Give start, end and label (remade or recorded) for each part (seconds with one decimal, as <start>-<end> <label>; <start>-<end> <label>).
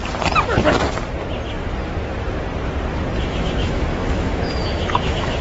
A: 0.0-3.2 recorded; 3.2-5.4 remade